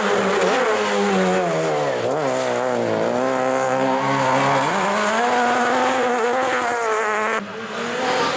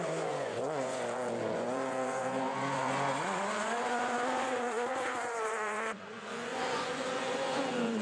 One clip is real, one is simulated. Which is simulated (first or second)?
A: second